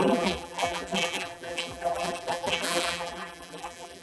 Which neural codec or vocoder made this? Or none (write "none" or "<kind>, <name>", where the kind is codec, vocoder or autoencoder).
vocoder, BigVGAN v2